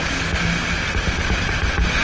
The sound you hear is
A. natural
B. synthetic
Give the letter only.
A